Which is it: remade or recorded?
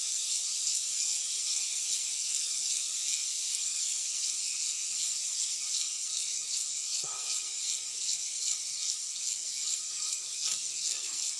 remade